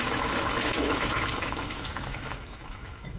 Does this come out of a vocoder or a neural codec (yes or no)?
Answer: yes